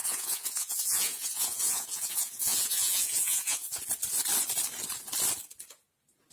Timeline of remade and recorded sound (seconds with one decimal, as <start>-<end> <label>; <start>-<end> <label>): 0.0-3.8 remade; 3.8-6.3 recorded